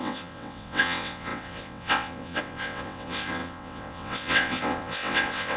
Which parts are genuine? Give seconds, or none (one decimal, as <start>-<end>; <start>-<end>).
none